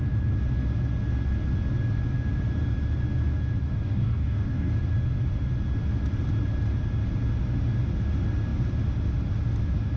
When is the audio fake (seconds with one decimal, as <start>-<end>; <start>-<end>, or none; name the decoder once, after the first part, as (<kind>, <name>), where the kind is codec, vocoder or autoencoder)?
3.6-4.7 (codec, DAC)